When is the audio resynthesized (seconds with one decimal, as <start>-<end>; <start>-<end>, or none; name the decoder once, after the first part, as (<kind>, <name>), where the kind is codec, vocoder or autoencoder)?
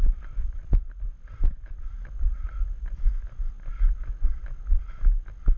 none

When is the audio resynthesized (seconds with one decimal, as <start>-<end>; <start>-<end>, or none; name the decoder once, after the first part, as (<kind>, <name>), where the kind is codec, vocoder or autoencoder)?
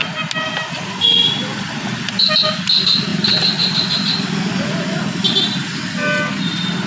none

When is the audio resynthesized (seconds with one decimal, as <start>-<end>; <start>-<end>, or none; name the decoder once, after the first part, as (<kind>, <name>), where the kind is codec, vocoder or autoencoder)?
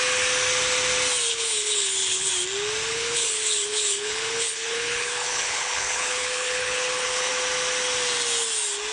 1.3-2.3 (codec, HILCodec); 2.9-7.3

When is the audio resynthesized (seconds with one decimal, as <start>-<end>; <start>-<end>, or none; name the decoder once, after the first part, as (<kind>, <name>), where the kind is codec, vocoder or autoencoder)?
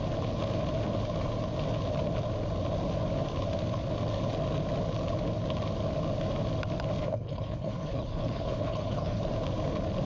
7.0-9.2 (codec, HILCodec)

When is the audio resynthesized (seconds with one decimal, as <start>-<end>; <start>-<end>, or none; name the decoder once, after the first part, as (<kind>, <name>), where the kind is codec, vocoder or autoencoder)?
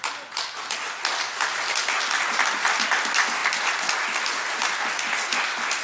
none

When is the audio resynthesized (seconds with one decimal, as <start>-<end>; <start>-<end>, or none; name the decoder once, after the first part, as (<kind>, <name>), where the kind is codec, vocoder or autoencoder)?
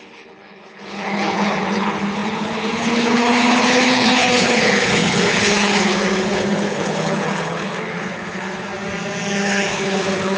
0.0-8.7 (codec, HILCodec); 9.4-10.4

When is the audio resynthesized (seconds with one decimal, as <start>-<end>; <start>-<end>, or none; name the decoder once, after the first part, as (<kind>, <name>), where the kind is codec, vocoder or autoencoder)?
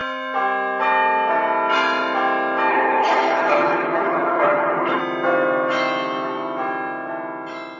2.7-5.0 (codec, HILCodec)